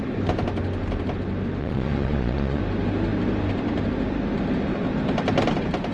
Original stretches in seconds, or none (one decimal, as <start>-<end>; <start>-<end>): 0.0-1.6; 2.6-5.9